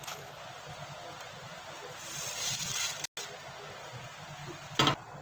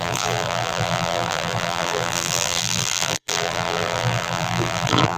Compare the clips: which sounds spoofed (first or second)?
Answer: second